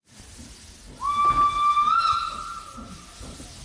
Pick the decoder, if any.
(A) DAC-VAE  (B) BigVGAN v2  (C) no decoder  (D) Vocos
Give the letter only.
C